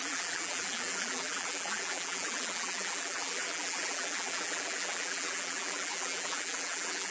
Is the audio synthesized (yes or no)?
yes